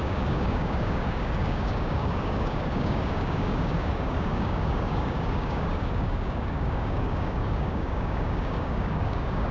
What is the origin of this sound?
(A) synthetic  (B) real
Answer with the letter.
A